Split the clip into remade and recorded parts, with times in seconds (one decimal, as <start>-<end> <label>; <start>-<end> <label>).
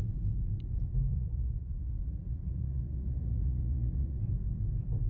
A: 0.0-1.1 recorded; 1.1-4.2 remade; 4.2-5.1 recorded